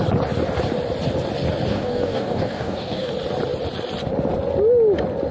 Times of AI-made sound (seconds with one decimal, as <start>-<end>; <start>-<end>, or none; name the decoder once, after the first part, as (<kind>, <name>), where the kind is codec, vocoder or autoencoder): 1.7-3.1 (codec, DAC)